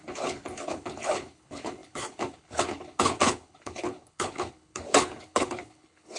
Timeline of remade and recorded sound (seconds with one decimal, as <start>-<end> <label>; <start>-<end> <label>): 0.0-6.2 remade